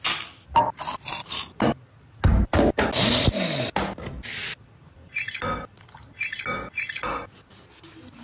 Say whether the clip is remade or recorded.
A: recorded